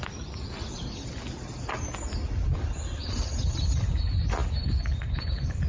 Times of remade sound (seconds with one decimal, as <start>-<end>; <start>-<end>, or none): none